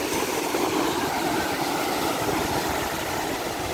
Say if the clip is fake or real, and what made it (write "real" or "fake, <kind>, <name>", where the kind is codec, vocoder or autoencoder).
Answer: real